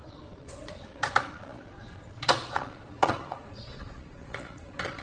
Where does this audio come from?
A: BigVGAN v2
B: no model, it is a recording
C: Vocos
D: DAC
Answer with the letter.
C